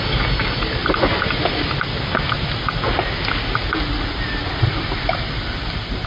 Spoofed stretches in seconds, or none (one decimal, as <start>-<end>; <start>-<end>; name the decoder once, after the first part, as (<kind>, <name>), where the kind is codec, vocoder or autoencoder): none